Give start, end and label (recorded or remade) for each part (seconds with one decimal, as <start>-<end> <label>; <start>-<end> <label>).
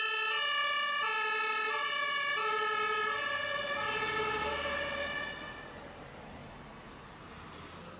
0.0-6.4 recorded; 6.4-7.0 remade; 7.0-8.0 recorded